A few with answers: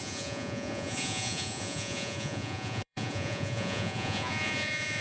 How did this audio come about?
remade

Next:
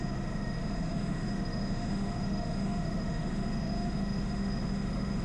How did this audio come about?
remade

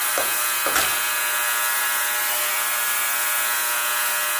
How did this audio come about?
recorded